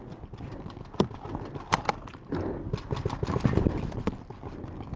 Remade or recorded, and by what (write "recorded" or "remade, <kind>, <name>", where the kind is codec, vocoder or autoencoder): recorded